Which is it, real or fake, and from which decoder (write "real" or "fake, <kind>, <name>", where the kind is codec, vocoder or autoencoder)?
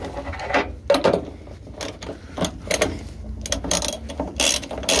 real